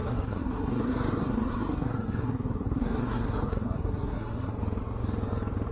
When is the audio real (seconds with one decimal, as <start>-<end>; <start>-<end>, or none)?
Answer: 4.5-5.7